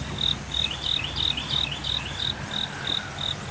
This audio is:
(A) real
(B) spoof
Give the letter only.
A